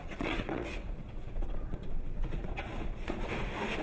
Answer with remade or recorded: remade